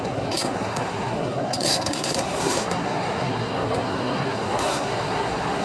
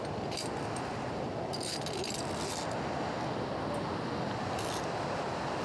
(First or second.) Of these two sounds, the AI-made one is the first